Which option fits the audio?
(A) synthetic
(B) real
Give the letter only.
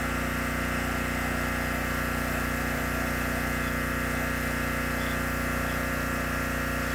B